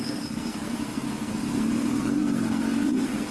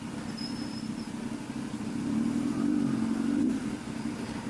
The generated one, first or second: first